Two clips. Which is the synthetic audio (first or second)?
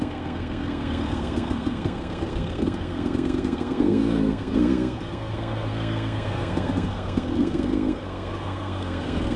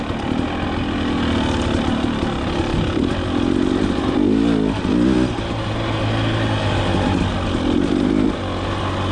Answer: first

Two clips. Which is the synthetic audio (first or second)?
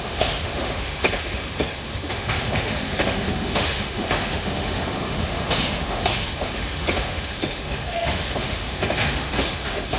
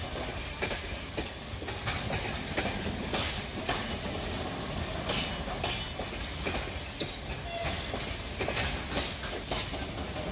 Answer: first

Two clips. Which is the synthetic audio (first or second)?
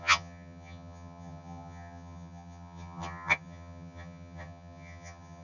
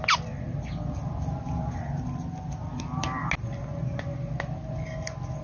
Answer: first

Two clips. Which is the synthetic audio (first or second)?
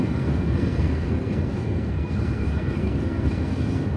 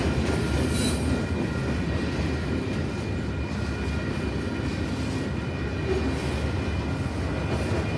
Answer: first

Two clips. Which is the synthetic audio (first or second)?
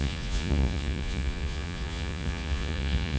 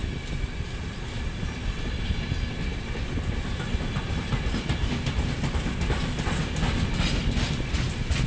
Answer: first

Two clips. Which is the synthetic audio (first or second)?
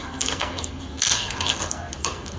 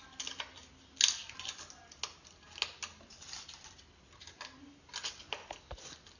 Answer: first